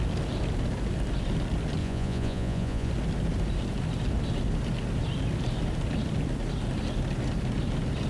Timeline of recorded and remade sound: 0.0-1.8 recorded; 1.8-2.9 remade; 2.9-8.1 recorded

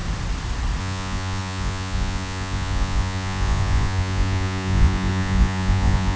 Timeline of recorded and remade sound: 0.0-0.8 recorded; 0.8-6.2 remade

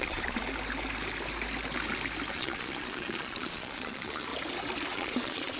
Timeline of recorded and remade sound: 0.0-0.4 remade; 0.4-2.3 recorded; 2.3-4.3 remade; 4.3-4.9 recorded; 4.9-5.6 remade

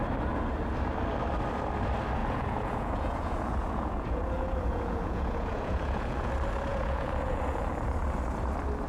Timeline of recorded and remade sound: 0.0-2.2 recorded; 2.2-6.3 remade; 6.3-6.7 recorded; 6.7-7.7 remade; 7.7-8.9 recorded

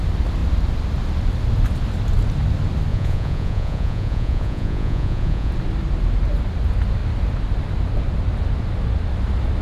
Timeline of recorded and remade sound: 0.0-2.9 recorded; 2.9-5.5 remade; 5.5-9.6 recorded

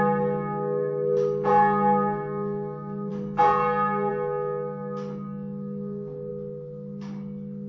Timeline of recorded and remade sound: 0.0-7.7 recorded